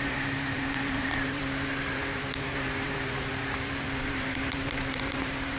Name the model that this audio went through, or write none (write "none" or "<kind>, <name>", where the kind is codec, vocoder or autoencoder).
vocoder, BigVGAN v2